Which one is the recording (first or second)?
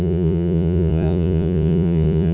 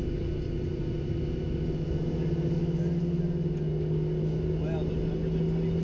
second